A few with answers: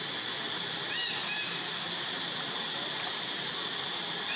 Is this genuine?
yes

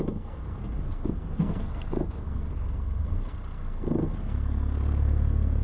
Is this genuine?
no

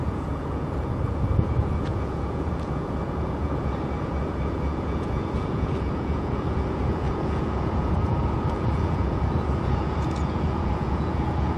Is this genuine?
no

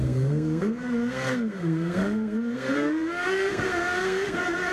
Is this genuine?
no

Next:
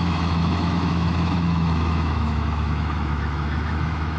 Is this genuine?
no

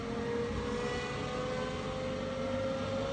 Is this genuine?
yes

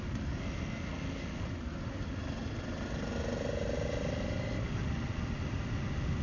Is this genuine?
yes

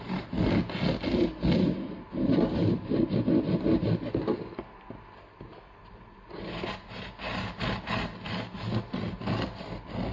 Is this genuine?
yes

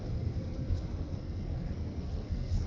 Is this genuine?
no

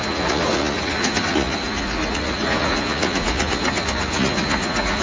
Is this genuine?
no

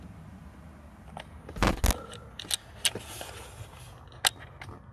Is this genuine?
yes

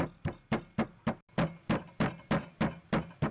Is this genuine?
yes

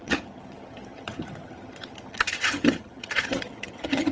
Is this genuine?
no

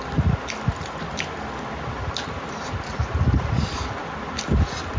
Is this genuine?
yes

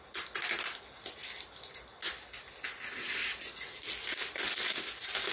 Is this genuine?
yes